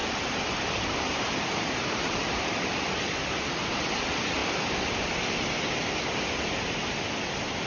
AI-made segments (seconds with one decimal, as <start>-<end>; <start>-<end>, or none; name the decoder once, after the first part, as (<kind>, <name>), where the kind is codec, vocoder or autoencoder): none